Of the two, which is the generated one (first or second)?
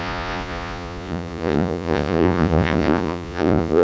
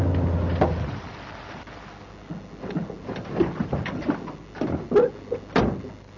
first